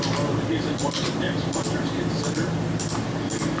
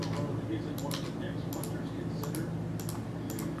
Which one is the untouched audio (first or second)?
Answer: second